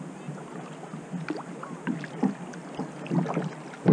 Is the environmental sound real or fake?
real